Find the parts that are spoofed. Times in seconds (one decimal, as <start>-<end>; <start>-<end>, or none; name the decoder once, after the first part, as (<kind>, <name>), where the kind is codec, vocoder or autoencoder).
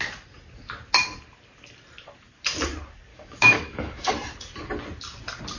3.1-4.1 (autoencoder, DAC-VAE)